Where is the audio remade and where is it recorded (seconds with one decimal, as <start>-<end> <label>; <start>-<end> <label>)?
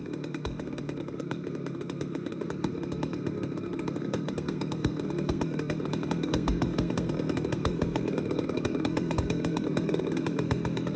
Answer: 0.0-11.0 remade